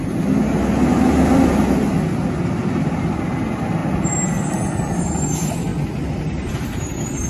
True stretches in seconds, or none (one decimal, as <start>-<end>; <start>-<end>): 0.0-7.3